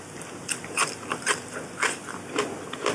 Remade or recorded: recorded